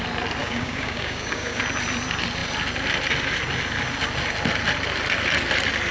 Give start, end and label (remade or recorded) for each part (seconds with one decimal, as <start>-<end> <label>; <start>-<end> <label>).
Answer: 0.0-0.4 recorded; 0.4-1.6 remade; 1.6-5.9 recorded